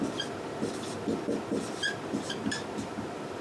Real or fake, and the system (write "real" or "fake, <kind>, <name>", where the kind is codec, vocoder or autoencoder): fake, vocoder, BigVGAN v2